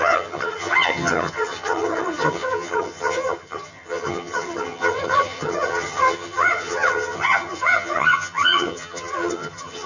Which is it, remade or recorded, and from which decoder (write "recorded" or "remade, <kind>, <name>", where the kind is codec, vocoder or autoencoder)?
remade, vocoder, HiFi-GAN